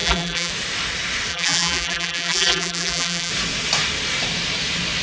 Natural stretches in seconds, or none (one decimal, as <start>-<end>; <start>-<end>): 0.5-1.3; 3.3-5.0